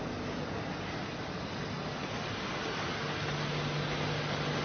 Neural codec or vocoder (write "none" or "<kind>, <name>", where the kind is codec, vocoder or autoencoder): none